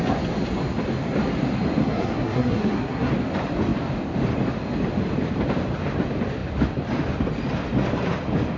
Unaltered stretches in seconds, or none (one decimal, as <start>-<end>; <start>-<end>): 0.0-1.8; 3.1-8.6